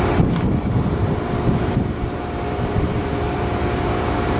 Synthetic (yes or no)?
yes